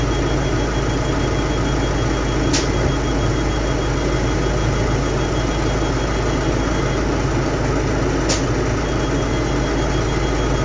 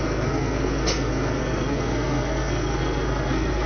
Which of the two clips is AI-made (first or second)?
second